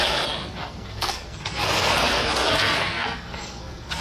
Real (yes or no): no